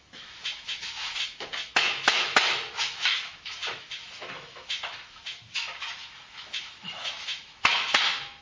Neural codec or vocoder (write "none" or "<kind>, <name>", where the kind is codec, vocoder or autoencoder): autoencoder, DAC-VAE